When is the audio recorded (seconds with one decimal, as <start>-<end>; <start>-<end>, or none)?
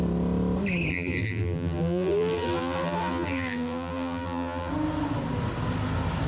0.0-0.9; 4.7-6.3